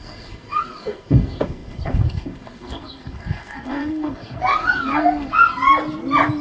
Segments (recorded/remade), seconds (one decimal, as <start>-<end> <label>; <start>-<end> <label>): 0.0-5.5 remade; 5.5-6.4 recorded

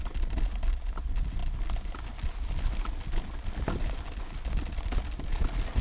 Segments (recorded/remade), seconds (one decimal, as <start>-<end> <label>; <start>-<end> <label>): 0.0-5.8 recorded

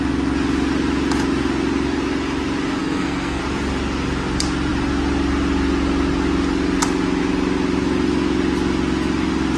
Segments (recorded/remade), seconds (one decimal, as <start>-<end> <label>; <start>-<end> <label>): 0.0-2.8 recorded; 2.8-3.4 remade; 3.4-9.6 recorded

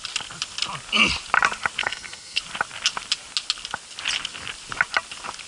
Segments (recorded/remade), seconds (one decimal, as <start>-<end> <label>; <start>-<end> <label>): 0.0-1.8 recorded; 1.8-2.4 remade; 2.4-5.5 recorded

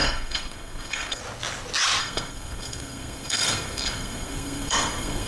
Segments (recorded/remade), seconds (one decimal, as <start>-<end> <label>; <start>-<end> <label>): 0.0-1.2 remade; 1.2-2.0 recorded; 2.0-5.3 remade

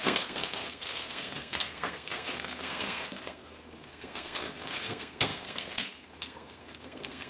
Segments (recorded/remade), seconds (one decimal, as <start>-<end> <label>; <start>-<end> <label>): 0.0-7.3 remade

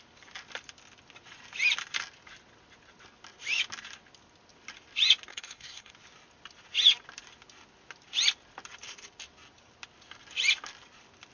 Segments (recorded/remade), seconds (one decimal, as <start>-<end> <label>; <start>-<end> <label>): 0.0-5.3 recorded; 5.3-5.9 remade; 5.9-11.3 recorded